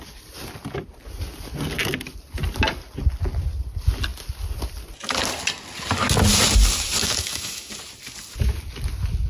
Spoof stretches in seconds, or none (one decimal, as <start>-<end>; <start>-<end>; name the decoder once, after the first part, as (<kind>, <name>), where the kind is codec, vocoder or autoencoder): 7.0-7.7 (autoencoder, DAC-VAE)